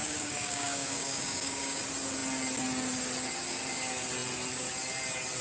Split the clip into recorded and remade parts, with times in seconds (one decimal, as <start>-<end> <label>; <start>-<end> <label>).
0.0-1.8 remade; 1.8-5.4 recorded